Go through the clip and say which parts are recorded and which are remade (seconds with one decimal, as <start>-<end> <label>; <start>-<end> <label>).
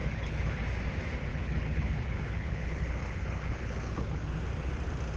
0.0-0.6 remade; 0.6-1.3 recorded; 1.3-4.4 remade; 4.4-5.2 recorded